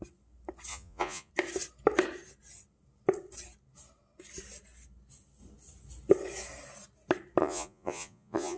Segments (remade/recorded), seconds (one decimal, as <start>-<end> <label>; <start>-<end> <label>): 0.0-0.7 recorded; 0.7-1.3 remade; 1.3-7.4 recorded; 7.4-8.6 remade